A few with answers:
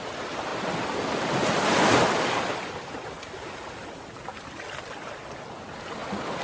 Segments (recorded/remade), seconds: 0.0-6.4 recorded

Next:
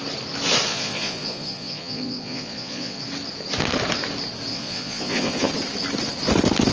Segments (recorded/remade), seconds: 0.0-0.7 recorded; 0.7-3.0 remade; 3.0-4.5 recorded; 4.5-5.5 remade; 5.5-6.7 recorded

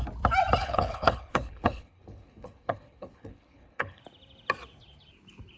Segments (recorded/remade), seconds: 0.0-0.6 recorded; 0.6-4.0 remade; 4.0-5.6 recorded